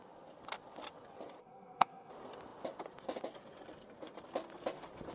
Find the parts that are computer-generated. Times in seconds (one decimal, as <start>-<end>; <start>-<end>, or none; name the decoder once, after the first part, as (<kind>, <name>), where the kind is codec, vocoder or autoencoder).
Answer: 1.4-2.1 (codec, SNAC)